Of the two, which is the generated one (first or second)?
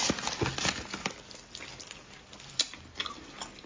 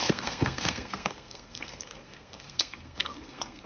second